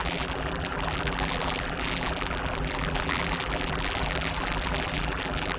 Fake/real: fake